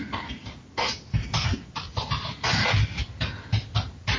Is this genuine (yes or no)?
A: yes